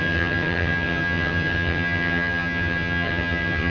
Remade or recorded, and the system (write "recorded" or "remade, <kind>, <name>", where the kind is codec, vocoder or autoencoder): remade, vocoder, HiFi-GAN